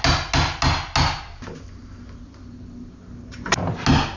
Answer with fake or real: real